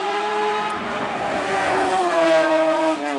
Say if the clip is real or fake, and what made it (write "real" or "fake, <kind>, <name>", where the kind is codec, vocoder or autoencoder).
fake, vocoder, Vocos